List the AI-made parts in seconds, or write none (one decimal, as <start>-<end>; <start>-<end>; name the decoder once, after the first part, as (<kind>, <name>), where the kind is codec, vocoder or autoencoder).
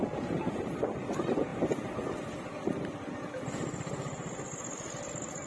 0.6-1.5 (vocoder, BigVGAN v2); 2.1-2.5; 4.5-5.5